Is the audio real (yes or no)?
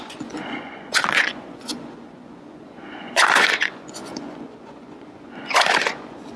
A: no